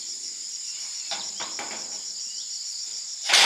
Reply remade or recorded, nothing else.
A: remade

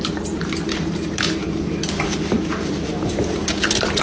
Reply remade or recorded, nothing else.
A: remade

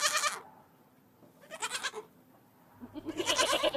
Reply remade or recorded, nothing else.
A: recorded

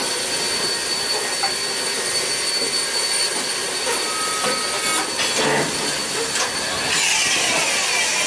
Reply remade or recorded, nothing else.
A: recorded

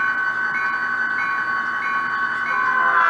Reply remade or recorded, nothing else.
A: recorded